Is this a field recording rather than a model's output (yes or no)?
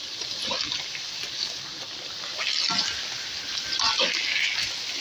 yes